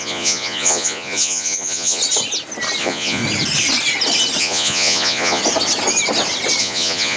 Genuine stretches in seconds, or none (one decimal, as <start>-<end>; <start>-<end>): 2.0-2.8; 3.2-4.4; 5.4-6.6

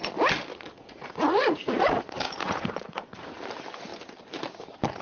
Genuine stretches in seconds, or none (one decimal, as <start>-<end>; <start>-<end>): 0.0-0.5; 3.4-5.0

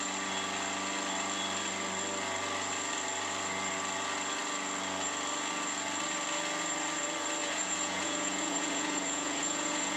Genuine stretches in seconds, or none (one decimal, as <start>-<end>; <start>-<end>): 0.0-7.4

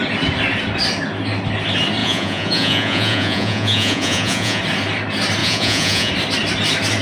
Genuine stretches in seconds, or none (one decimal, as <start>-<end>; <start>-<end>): 0.0-2.0; 4.6-5.4; 6.1-7.0

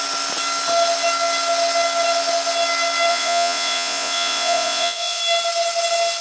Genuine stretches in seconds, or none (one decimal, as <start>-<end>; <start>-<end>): 0.0-3.1; 5.2-6.2

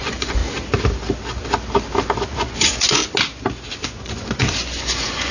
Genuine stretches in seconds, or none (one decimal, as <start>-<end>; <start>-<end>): 0.4-2.3; 3.0-3.7